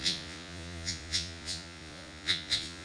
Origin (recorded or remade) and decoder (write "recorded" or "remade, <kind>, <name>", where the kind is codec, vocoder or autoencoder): remade, vocoder, Vocos